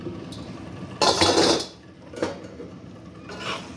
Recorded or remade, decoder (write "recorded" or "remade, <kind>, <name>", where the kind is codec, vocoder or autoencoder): recorded